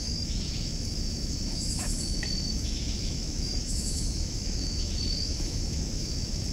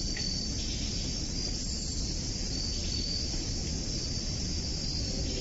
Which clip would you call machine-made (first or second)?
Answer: first